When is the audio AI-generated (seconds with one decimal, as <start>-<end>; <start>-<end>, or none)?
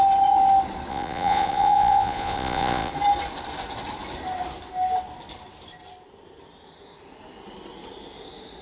0.9-2.9